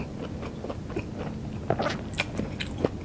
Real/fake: real